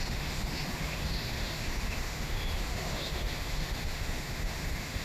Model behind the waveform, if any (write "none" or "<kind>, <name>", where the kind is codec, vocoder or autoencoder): autoencoder, DAC-VAE